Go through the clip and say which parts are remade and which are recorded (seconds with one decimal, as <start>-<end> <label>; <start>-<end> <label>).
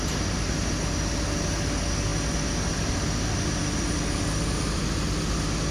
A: 0.0-5.7 recorded